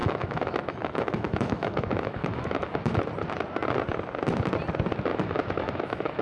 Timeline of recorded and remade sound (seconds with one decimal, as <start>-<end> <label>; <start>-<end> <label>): 0.0-3.0 remade; 3.0-5.1 recorded; 5.1-6.2 remade